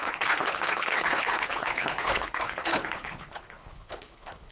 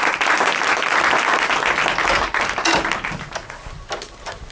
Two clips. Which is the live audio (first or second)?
second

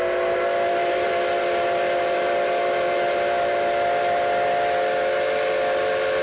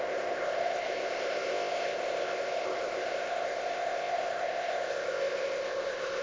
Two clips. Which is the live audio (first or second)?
first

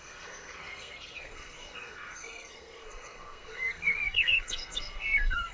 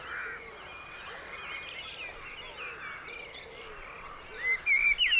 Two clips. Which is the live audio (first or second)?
second